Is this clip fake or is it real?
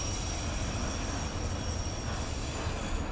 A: real